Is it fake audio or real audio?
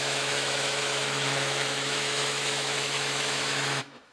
fake